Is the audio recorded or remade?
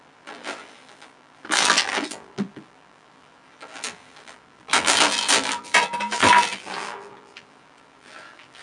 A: remade